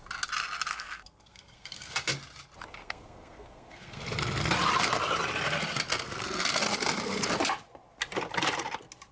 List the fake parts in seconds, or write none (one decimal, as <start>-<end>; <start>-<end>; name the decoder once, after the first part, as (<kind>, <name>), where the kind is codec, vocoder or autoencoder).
0.7-1.9 (codec, SNAC); 2.8-4.0